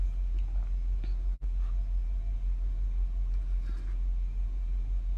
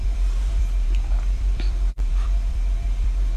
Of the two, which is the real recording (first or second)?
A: first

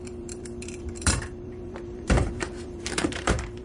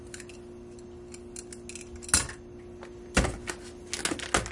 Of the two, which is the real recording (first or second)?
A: second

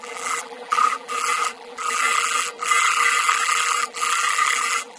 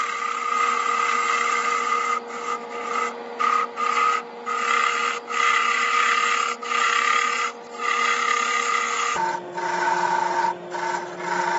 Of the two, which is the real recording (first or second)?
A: second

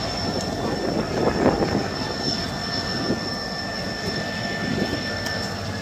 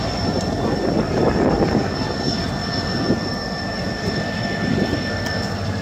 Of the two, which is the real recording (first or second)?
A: first